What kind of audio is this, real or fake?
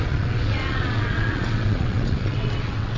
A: fake